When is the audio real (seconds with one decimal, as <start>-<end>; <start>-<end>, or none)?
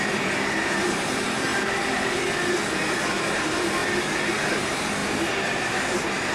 1.5-3.3; 3.8-4.4